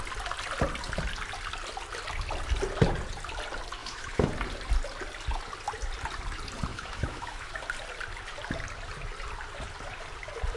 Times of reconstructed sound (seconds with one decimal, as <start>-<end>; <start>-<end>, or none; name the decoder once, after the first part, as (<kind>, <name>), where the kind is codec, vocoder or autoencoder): 3.8-4.3 (autoencoder, DAC-VAE); 6.7-7.6